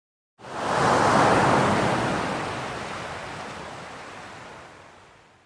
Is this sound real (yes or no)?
yes